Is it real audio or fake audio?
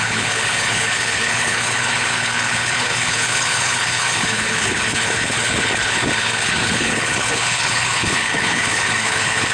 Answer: fake